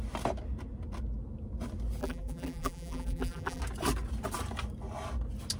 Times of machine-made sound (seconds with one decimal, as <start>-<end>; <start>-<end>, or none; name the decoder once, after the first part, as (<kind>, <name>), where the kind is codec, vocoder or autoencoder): 2.0-3.6 (vocoder, BigVGAN v2)